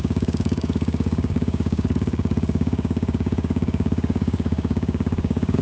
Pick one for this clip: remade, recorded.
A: remade